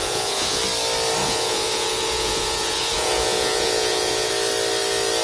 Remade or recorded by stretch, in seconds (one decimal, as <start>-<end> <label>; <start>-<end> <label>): 0.0-0.6 remade; 0.6-1.2 recorded; 1.2-4.3 remade; 4.3-5.2 recorded